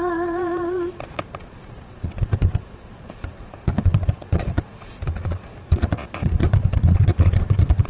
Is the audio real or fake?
fake